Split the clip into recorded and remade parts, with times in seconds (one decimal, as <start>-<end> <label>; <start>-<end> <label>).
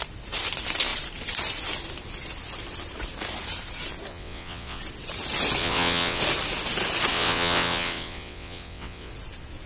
0.0-4.1 recorded; 4.1-4.8 remade; 4.8-5.6 recorded; 5.6-6.2 remade; 6.2-7.1 recorded; 7.1-9.1 remade; 9.1-9.7 recorded